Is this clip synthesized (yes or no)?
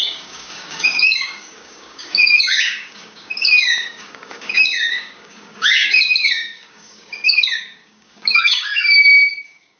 yes